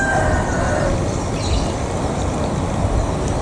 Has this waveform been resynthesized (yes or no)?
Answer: no